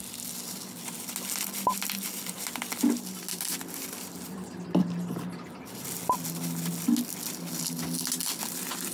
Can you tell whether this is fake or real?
real